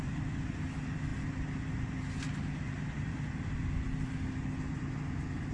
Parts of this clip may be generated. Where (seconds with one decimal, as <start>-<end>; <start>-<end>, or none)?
none